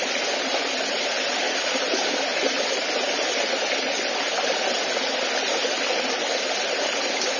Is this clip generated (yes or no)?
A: no